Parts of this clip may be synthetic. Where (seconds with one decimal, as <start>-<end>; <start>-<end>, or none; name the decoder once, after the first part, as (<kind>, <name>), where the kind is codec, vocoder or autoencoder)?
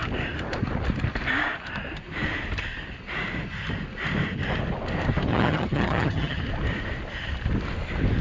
5.3-6.4 (vocoder, HiFi-GAN)